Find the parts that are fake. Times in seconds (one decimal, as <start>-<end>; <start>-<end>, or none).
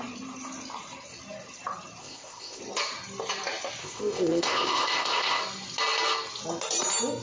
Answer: 2.0-2.6; 3.8-5.4